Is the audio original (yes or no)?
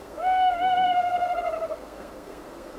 no